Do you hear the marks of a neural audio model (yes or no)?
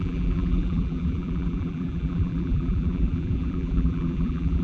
yes